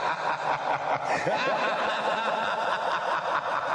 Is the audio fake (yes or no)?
no